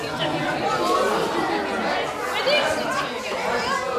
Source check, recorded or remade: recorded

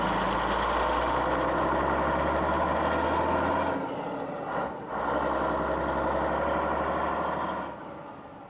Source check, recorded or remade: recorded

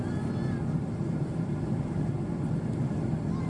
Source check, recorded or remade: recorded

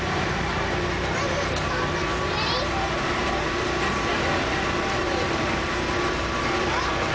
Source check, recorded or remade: remade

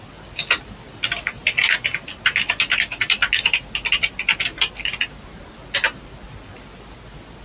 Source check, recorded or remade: recorded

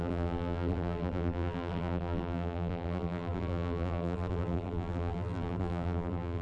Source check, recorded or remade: remade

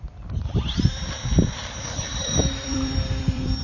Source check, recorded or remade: remade